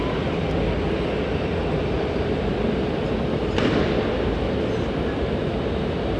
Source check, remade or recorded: recorded